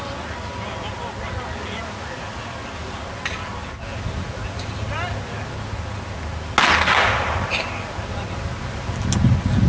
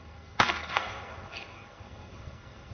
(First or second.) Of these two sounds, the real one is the first